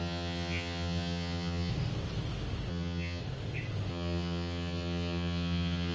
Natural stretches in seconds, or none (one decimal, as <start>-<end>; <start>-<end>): 1.7-2.7; 3.2-3.9